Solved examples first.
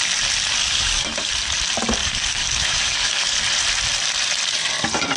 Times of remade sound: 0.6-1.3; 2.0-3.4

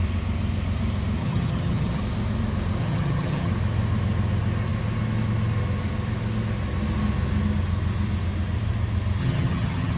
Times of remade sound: 1.2-2.0; 2.8-3.5; 9.2-10.0

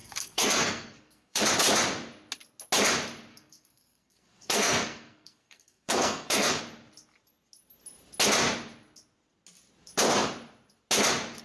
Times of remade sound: 0.0-1.4; 3.3-6.6

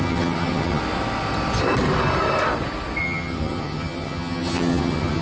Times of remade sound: 0.0-0.8; 3.0-5.2

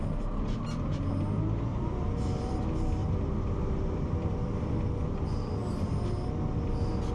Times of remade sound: 1.7-2.6; 3.0-4.7